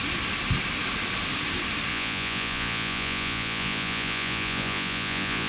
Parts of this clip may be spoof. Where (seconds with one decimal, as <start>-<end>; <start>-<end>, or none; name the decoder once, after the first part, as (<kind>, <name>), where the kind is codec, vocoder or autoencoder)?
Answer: 1.9-5.5 (vocoder, Vocos)